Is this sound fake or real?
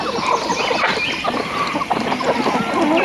real